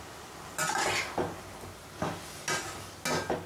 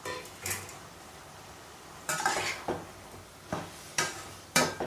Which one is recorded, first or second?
first